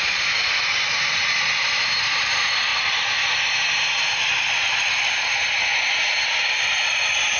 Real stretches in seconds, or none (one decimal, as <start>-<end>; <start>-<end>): 0.0-7.4